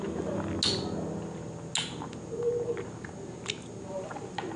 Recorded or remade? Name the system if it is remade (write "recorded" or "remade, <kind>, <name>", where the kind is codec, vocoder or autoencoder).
recorded